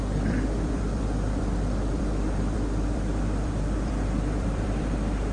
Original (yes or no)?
no